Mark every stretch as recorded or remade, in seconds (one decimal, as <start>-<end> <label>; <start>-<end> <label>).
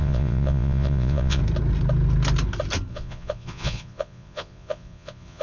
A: 0.0-1.4 remade; 1.4-2.9 recorded; 2.9-5.4 remade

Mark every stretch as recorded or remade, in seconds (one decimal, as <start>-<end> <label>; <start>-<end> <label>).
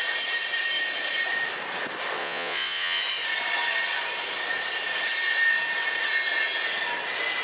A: 0.0-2.2 recorded; 2.2-3.0 remade; 3.0-7.4 recorded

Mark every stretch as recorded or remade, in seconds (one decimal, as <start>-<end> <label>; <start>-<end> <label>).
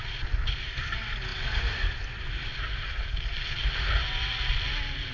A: 0.0-5.1 recorded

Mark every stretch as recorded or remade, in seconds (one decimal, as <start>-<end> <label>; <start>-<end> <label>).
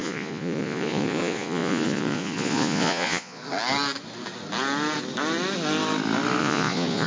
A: 0.0-3.4 remade; 3.4-6.4 recorded; 6.4-7.1 remade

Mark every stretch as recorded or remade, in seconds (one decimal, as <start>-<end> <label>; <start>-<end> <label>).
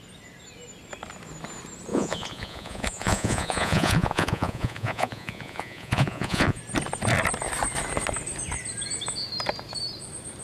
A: 0.0-1.9 recorded; 1.9-6.6 remade; 6.6-10.4 recorded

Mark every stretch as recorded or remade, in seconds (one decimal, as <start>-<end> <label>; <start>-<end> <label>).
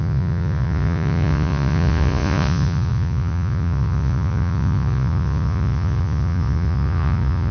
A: 0.0-7.5 remade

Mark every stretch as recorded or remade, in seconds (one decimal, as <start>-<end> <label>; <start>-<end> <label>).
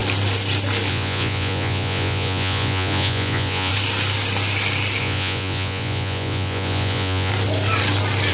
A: 0.0-0.9 recorded; 0.9-3.7 remade; 3.7-5.0 recorded; 5.0-7.3 remade; 7.3-8.3 recorded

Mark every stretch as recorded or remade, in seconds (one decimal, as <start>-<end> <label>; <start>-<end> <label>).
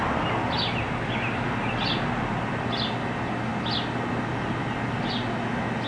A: 0.0-5.9 recorded